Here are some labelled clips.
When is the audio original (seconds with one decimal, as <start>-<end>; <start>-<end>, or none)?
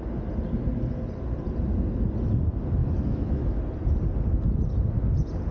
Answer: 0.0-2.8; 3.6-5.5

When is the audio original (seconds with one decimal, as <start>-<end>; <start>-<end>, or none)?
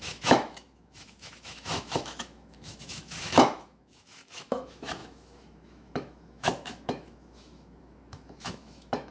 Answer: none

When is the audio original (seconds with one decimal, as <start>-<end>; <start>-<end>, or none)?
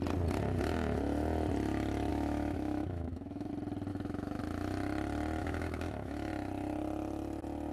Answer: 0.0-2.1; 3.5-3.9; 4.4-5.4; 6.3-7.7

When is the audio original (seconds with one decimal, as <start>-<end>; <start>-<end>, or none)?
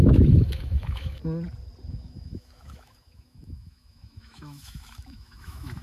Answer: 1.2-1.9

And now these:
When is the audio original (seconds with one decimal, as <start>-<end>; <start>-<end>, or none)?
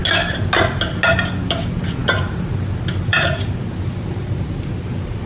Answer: 0.0-5.3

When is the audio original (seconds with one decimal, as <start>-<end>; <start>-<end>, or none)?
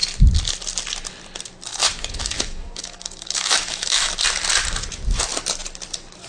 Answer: 0.0-1.7; 4.1-6.3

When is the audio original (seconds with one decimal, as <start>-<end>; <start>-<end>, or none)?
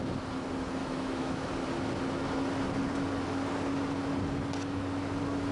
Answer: 0.0-0.8; 1.5-5.5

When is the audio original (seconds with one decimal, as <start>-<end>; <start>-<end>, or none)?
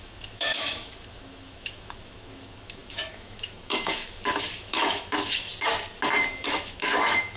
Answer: 5.5-6.3